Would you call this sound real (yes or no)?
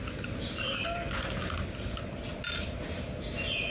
yes